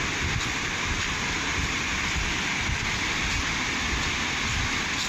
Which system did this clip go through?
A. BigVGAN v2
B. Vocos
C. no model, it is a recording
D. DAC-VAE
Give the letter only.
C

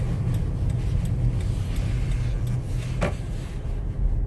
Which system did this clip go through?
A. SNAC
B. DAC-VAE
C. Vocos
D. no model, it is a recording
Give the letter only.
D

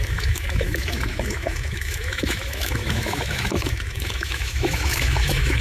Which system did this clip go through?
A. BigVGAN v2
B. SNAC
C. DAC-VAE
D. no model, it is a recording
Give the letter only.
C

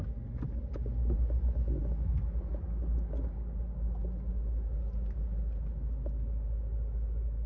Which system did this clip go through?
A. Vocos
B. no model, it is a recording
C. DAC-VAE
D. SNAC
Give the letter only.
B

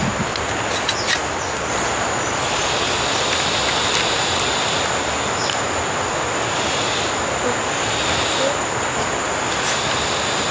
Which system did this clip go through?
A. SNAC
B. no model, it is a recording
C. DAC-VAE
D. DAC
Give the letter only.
B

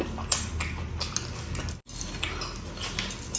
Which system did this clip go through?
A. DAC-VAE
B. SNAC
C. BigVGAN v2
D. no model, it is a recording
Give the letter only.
D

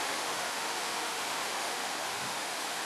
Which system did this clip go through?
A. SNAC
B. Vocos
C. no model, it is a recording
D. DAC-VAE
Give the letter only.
D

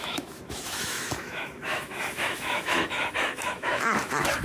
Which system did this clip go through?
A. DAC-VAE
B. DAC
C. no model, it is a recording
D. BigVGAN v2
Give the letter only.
A